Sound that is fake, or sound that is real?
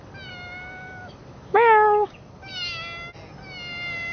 real